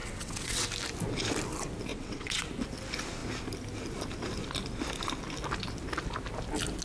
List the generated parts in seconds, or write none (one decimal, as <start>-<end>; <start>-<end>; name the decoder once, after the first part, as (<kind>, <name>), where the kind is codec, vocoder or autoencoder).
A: 0.0-0.7 (vocoder, WaveNeXt); 1.9-2.5